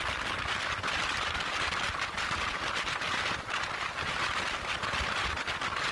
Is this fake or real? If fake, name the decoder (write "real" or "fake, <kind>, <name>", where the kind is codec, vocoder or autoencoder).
real